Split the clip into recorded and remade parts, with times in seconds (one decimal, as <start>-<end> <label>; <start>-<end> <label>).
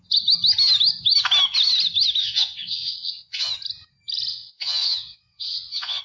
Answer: 0.0-2.2 recorded; 2.2-3.5 remade; 3.5-4.3 recorded; 4.3-6.0 remade